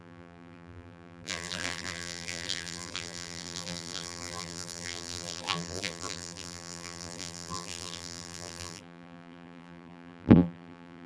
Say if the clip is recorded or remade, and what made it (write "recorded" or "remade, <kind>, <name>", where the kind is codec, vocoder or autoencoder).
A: remade, vocoder, BigVGAN v2